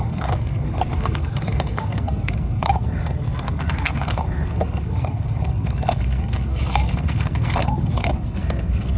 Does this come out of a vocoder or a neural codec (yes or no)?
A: yes